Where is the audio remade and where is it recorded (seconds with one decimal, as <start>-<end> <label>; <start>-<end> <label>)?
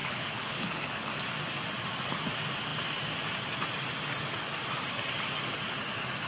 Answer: 0.0-1.1 remade; 1.1-6.3 recorded